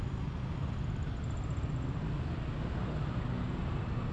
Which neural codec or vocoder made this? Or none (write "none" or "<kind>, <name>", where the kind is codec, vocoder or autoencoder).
none